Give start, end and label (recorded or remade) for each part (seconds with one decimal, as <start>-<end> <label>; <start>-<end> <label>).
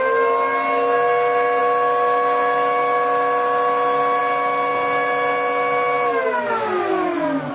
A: 0.0-7.5 recorded